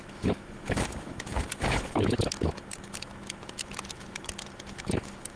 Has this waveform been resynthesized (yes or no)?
yes